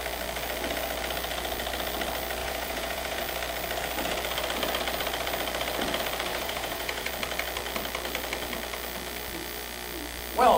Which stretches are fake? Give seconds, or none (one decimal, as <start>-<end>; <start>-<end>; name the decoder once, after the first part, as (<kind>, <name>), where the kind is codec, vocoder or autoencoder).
2.4-3.2 (vocoder, Vocos); 6.3-7.1